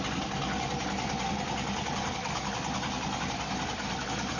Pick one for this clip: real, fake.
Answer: real